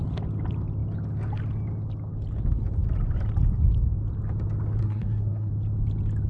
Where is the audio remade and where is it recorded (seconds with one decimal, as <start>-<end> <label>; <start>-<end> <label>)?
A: 0.0-4.8 recorded; 4.8-5.5 remade; 5.5-6.3 recorded

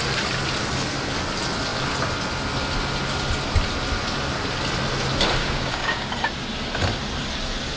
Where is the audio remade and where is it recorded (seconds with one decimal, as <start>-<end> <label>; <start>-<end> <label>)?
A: 0.0-5.4 recorded; 5.4-6.1 remade; 6.1-7.8 recorded

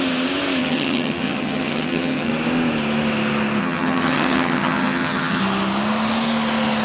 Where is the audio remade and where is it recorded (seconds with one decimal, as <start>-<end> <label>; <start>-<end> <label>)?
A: 0.0-0.6 recorded; 0.6-2.3 remade; 2.3-3.6 recorded; 3.6-5.4 remade; 5.4-6.8 recorded

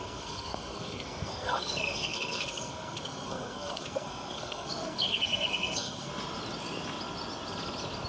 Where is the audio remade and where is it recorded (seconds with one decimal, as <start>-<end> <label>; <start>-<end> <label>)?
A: 0.0-6.1 remade; 6.1-8.1 recorded

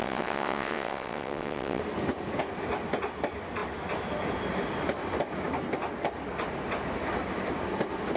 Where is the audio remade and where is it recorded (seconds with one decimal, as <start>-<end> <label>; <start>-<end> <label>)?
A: 0.0-1.8 remade; 1.8-8.2 recorded

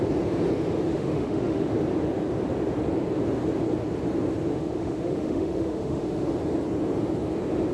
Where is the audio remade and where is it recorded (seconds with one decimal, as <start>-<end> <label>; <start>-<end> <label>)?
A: 0.0-0.9 recorded; 0.9-1.7 remade; 1.7-4.5 recorded; 4.5-6.3 remade; 6.3-7.7 recorded

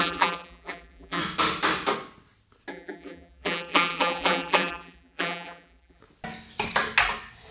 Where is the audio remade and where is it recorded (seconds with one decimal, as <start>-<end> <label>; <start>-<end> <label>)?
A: 0.0-1.2 remade; 1.2-2.7 recorded; 2.7-6.0 remade; 6.0-7.5 recorded

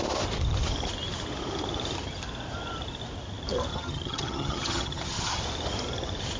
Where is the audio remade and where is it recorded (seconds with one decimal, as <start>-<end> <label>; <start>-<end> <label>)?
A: 0.0-3.7 recorded; 3.7-5.4 remade; 5.4-6.4 recorded